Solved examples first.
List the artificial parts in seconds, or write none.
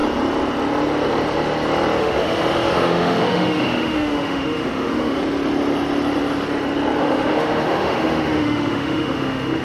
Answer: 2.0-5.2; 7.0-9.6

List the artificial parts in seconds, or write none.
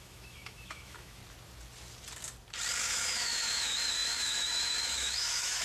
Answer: 0.0-1.2; 2.8-5.6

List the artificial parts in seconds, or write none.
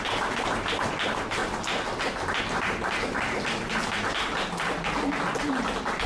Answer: none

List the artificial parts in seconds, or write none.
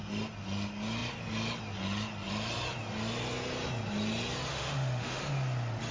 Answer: 4.5-5.2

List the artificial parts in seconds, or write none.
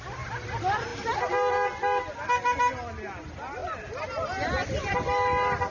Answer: none